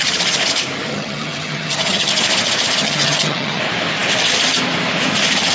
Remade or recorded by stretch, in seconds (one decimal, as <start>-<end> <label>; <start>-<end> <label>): 0.0-0.9 recorded; 0.9-2.1 remade; 2.1-2.8 recorded; 2.8-3.6 remade; 3.6-5.5 recorded